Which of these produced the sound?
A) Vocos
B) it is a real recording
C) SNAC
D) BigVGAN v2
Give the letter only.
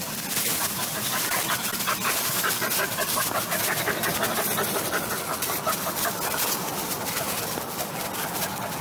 B